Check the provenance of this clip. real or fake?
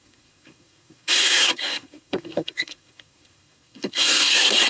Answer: fake